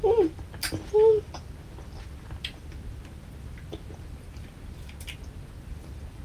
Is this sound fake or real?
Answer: real